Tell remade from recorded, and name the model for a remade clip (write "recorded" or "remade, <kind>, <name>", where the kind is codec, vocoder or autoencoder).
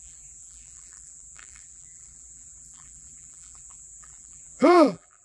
remade, vocoder, BigVGAN v2